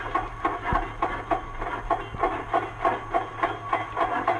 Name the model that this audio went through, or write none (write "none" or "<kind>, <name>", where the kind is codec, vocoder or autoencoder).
none